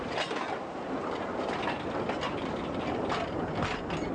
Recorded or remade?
recorded